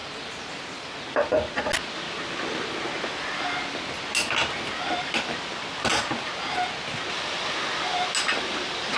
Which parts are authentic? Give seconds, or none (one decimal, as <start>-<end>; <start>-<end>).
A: 0.0-9.0